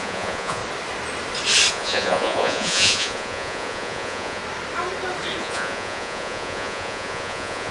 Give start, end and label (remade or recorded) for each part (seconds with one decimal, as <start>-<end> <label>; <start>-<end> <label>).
0.0-0.6 remade; 0.6-1.7 recorded; 1.7-4.4 remade; 4.4-5.4 recorded; 5.4-7.7 remade